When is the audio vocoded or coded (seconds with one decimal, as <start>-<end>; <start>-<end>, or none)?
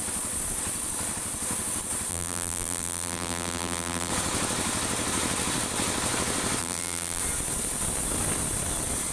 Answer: 2.1-4.1; 6.6-7.2